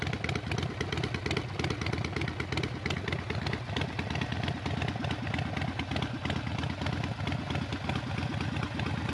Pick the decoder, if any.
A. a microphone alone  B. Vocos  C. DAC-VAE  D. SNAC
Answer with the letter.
A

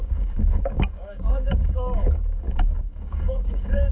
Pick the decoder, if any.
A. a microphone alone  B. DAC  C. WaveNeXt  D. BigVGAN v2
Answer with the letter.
B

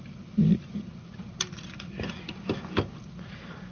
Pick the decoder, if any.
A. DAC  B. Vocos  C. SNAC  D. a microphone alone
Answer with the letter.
D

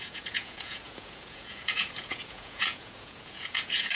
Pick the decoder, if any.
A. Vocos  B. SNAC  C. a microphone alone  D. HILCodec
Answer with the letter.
A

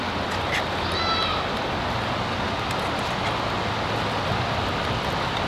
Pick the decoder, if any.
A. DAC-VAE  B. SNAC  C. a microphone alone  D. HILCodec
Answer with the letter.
C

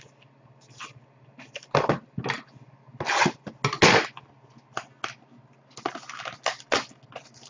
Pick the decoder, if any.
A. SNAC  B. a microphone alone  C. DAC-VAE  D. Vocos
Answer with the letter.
B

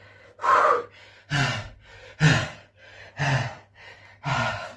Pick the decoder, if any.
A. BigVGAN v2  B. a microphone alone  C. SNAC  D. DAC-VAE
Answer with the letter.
B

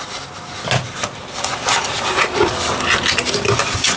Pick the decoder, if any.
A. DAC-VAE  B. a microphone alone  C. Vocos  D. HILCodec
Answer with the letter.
B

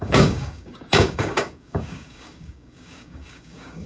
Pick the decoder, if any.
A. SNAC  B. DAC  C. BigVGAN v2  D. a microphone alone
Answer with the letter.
B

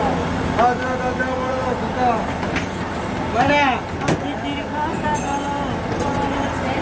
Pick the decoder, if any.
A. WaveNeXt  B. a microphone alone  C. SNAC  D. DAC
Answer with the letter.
B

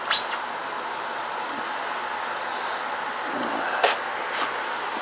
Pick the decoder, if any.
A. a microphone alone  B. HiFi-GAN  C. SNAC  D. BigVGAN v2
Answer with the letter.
A